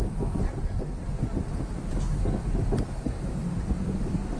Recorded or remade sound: recorded